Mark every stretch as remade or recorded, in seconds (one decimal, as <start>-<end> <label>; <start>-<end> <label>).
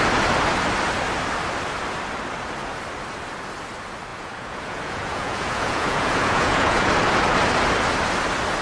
0.0-4.1 recorded; 4.1-6.9 remade; 6.9-8.6 recorded